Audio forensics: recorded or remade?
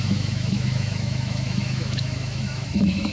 remade